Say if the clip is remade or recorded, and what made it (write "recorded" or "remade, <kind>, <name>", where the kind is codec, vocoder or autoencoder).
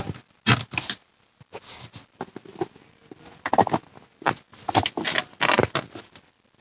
recorded